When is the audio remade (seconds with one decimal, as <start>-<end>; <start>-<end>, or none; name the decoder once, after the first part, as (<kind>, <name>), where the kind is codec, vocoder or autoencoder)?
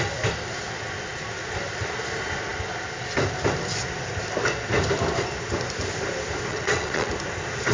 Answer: 6.5-7.1 (vocoder, WaveNeXt)